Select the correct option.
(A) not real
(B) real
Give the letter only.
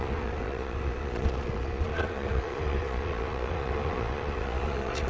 A